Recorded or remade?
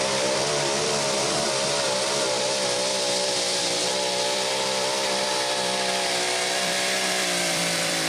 remade